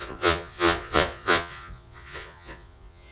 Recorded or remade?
remade